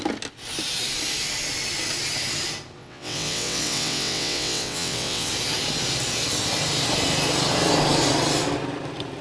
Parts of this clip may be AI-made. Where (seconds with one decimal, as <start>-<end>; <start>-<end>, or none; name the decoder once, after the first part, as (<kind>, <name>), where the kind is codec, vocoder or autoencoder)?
2.8-5.3 (vocoder, WaveNeXt)